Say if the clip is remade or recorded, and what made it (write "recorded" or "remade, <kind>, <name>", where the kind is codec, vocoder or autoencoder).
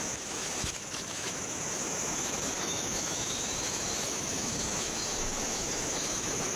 remade, autoencoder, DAC-VAE